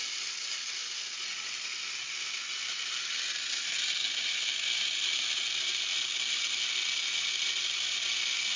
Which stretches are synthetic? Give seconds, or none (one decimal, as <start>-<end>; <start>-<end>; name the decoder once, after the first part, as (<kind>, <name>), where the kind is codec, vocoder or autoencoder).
none